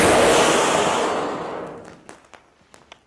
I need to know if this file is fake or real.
real